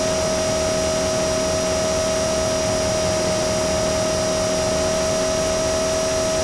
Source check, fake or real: real